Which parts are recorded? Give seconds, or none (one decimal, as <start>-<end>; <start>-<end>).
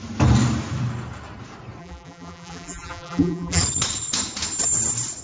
0.0-1.8; 3.6-5.2